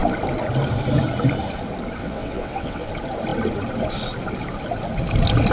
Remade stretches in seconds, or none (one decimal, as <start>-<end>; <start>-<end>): 2.0-2.9